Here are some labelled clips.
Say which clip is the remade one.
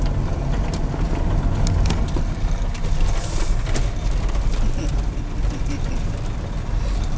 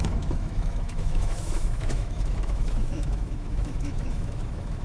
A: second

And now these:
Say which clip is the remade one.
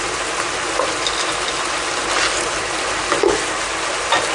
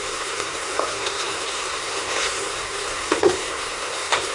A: second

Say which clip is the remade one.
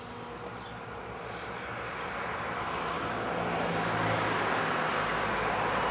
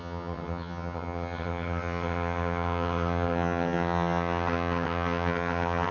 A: second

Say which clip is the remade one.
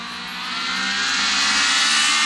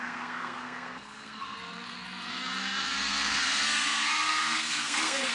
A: second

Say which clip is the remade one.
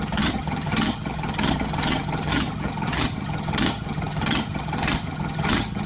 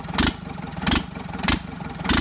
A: first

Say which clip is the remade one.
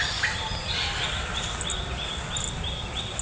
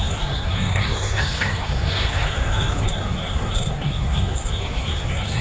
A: second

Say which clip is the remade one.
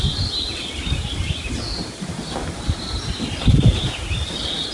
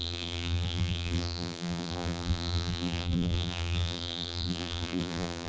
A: second